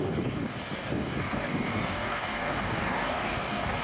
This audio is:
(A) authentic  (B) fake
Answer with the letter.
B